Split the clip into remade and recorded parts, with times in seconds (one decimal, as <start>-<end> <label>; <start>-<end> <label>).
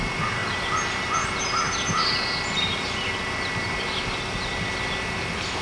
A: 0.0-5.6 recorded